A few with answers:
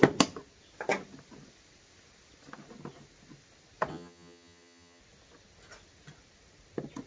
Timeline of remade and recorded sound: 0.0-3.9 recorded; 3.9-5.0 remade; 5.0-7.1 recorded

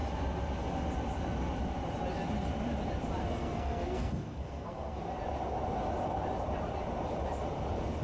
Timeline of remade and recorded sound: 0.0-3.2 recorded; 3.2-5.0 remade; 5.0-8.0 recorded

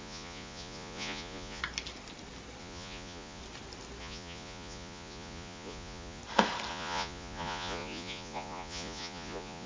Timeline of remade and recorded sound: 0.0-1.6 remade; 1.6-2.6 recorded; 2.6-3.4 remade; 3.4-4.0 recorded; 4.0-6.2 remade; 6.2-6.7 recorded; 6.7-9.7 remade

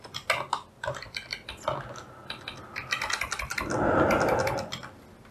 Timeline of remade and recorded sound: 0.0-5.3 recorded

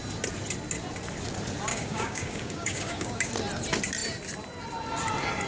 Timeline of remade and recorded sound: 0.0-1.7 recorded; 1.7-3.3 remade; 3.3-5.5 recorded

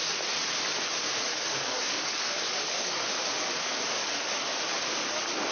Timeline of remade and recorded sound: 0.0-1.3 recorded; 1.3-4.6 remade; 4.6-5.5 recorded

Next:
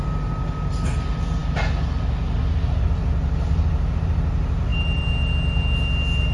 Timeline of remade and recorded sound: 0.0-6.3 recorded

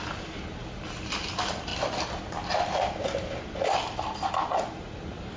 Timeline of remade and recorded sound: 0.0-1.7 remade; 1.7-2.2 recorded; 2.2-5.4 remade